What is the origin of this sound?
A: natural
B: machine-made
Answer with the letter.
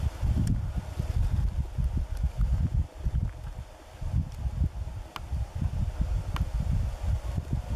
A